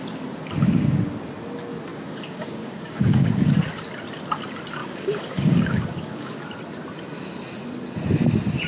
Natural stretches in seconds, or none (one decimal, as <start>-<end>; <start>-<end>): 0.0-1.9; 3.4-4.8; 6.4-8.7